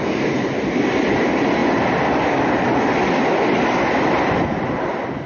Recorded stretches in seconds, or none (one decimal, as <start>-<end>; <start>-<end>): 0.0-5.3